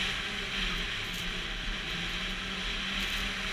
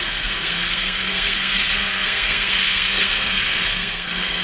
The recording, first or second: first